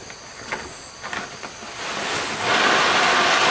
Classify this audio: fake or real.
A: real